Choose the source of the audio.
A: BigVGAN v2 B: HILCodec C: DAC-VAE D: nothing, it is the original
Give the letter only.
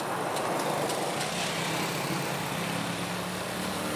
D